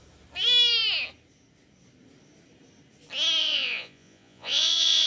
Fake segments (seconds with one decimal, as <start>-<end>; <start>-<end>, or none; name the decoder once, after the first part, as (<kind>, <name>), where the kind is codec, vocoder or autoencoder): 3.4-5.1 (vocoder, Vocos)